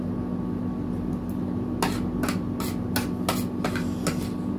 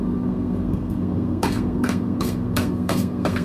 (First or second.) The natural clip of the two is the first